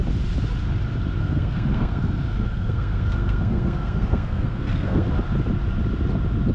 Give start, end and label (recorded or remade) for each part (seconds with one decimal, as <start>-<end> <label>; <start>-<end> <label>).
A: 0.0-1.2 recorded; 1.2-5.1 remade; 5.1-6.5 recorded